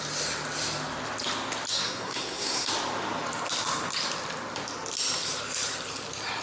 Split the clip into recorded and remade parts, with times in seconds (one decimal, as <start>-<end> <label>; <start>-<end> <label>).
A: 0.0-1.7 recorded; 1.7-2.7 remade; 2.7-6.4 recorded